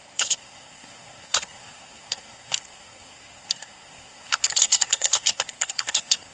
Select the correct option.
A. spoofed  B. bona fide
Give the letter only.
A